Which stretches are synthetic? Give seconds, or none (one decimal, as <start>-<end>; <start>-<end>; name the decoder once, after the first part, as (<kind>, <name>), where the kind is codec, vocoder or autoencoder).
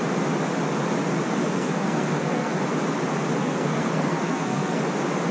1.4-2.6 (codec, SNAC); 3.4-4.8